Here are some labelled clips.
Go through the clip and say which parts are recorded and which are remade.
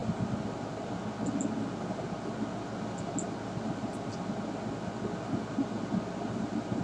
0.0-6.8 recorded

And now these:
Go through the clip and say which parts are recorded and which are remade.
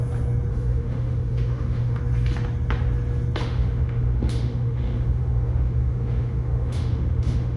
0.0-0.5 recorded; 0.5-2.0 remade; 2.0-3.4 recorded; 3.4-7.6 remade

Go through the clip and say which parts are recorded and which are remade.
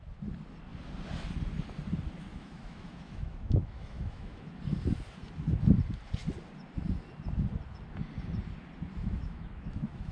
0.0-2.3 recorded; 2.3-4.6 remade; 4.6-9.0 recorded; 9.0-10.1 remade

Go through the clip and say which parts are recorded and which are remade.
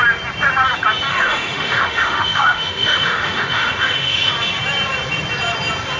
0.0-1.1 recorded; 1.1-4.3 remade; 4.3-6.0 recorded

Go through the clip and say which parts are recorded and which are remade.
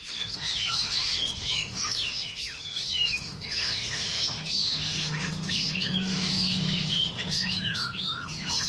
0.0-8.7 remade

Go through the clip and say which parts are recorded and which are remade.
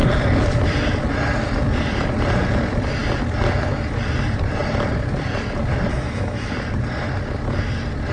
0.0-5.9 recorded; 5.9-6.5 remade; 6.5-8.1 recorded